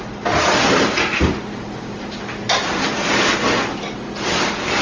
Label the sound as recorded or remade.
recorded